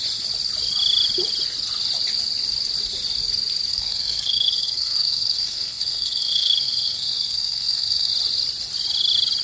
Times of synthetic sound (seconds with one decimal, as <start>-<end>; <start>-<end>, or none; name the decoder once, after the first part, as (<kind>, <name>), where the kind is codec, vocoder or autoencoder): 3.7-8.1 (codec, SNAC)